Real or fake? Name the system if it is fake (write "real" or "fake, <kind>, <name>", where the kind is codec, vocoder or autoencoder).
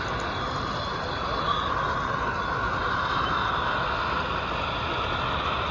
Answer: real